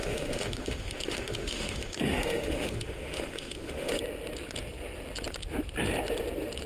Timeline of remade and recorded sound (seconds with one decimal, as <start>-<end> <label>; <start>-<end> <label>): 0.0-4.0 remade; 4.0-6.7 recorded